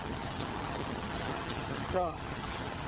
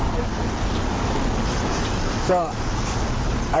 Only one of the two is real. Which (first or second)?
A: second